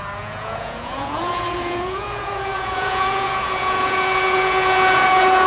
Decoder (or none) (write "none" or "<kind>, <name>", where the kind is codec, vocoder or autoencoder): vocoder, Vocos